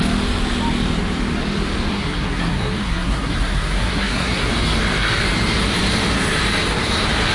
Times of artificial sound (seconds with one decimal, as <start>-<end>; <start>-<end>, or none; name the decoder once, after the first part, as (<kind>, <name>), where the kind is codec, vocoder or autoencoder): 1.9-4.5 (codec, SNAC)